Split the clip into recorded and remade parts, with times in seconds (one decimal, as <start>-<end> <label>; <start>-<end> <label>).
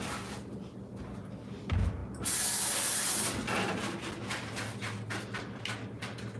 0.0-6.4 recorded